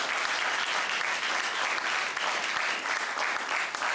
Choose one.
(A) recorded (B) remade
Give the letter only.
A